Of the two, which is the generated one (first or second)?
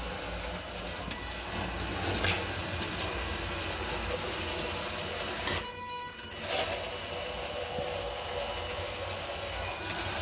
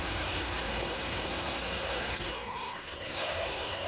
second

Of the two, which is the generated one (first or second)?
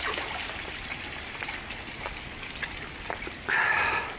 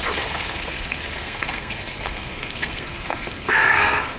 second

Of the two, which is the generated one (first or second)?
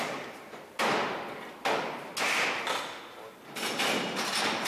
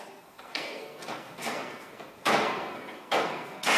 second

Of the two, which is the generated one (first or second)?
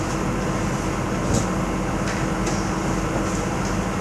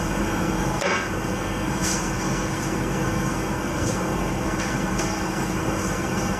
second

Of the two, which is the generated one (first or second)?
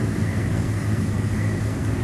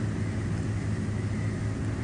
first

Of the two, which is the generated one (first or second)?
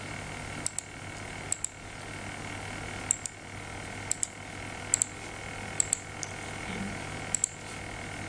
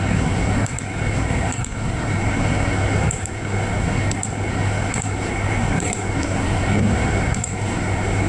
second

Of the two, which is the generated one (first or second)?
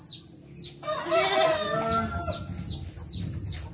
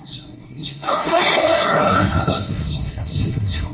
second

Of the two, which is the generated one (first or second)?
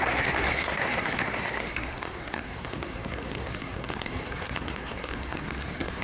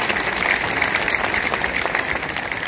first